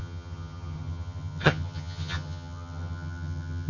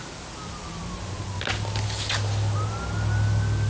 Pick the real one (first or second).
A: second